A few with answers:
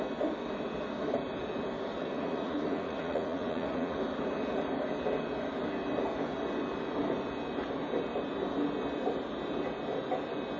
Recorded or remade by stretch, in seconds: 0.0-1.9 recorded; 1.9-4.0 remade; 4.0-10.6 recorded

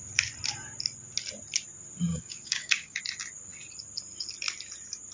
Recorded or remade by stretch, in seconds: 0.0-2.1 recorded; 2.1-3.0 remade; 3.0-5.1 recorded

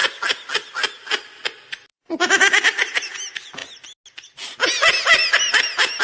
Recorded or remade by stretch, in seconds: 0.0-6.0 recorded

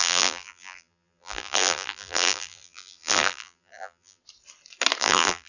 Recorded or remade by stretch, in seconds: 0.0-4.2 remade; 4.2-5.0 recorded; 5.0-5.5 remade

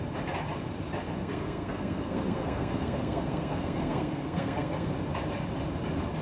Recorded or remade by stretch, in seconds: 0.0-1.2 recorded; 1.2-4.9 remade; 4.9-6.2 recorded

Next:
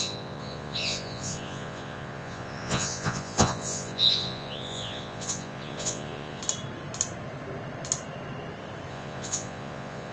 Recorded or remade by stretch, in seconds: 0.0-6.4 remade; 6.4-8.9 recorded; 8.9-10.1 remade